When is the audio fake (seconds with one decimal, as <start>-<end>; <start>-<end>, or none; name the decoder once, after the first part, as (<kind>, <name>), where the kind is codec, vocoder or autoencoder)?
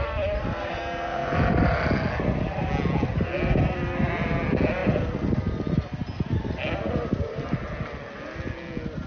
none